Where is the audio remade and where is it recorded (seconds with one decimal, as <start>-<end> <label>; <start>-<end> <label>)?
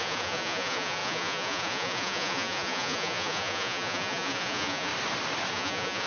0.0-4.9 remade; 4.9-5.5 recorded; 5.5-6.1 remade